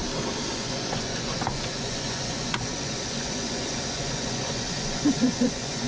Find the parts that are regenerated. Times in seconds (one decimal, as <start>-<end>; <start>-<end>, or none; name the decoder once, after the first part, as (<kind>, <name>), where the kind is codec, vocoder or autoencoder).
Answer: 0.5-5.9 (vocoder, Vocos)